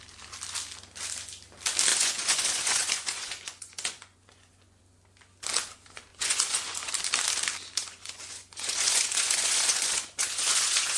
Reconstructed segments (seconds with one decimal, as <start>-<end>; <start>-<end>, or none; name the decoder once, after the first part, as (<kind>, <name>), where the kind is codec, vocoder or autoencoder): 1.9-4.8 (vocoder, Vocos); 6.1-6.9; 7.8-11.0